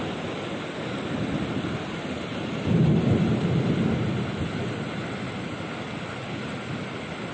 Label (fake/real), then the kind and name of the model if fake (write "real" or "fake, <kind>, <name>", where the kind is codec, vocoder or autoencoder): real